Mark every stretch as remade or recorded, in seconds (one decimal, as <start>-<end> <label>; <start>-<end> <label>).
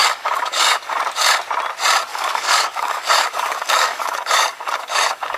0.0-1.0 remade; 1.0-2.1 recorded; 2.1-5.4 remade